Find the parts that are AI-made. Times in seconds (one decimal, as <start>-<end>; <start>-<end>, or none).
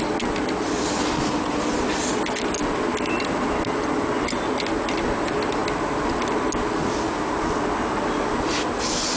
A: none